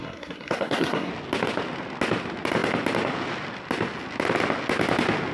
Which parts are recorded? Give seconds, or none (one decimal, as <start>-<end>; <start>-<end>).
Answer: 1.1-5.3